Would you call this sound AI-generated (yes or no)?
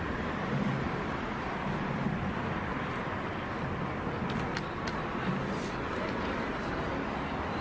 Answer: no